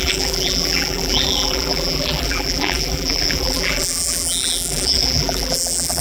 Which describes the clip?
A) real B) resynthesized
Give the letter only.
B